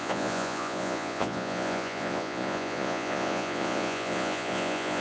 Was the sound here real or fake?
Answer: fake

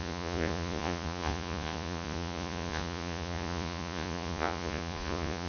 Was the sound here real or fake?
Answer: fake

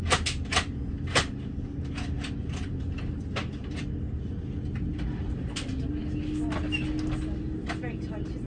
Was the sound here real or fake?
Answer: real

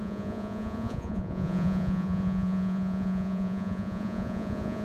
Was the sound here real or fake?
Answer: fake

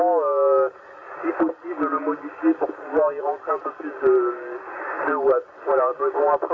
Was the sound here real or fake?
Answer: real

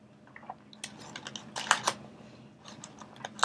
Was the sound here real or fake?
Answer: real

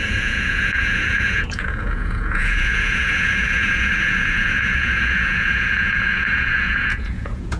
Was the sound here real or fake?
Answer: fake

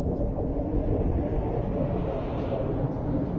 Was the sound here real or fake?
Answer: real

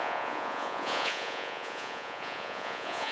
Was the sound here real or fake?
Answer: fake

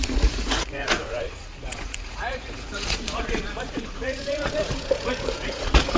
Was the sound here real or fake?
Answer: fake